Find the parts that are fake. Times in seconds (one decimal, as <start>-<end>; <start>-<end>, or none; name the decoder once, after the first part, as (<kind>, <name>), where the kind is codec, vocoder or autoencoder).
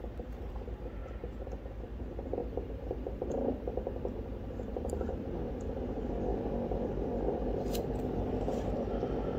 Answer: 2.4-5.8 (vocoder, BigVGAN v2); 6.3-8.3